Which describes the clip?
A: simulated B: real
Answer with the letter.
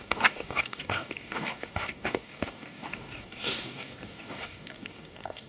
A